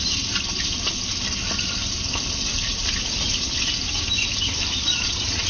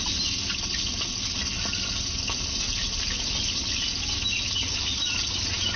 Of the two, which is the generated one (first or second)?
first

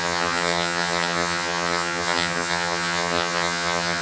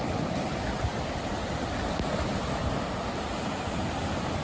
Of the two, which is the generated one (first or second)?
first